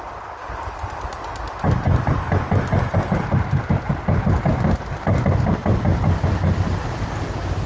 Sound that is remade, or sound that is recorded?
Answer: recorded